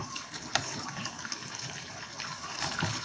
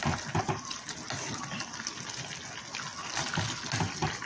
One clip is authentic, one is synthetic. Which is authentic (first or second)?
second